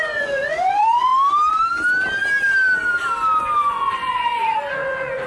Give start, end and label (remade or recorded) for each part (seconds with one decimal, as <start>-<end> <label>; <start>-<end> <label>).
0.0-1.1 remade; 1.1-3.7 recorded; 3.7-5.3 remade